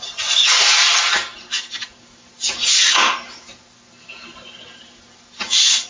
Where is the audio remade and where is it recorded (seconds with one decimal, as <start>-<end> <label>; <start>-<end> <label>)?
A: 0.0-5.9 recorded